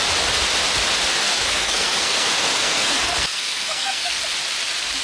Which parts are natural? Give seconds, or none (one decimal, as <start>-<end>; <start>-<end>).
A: 0.0-1.2; 4.2-5.0